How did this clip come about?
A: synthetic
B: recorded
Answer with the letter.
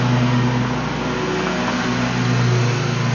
B